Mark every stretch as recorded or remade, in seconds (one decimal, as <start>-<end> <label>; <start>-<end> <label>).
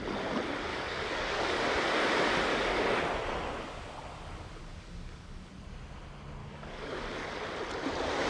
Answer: 0.0-0.7 recorded; 0.7-1.6 remade; 1.6-2.5 recorded; 2.5-3.0 remade; 3.0-4.6 recorded; 4.6-5.5 remade; 5.5-6.4 recorded; 6.4-7.3 remade; 7.3-8.3 recorded